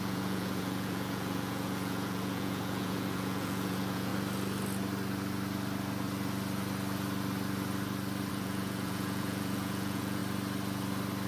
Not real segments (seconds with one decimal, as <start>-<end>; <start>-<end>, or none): 0.0-4.1; 8.3-10.2